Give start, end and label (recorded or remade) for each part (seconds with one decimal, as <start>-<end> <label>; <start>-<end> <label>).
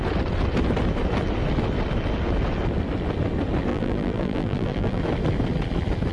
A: 0.0-3.7 recorded; 3.7-5.0 remade; 5.0-6.1 recorded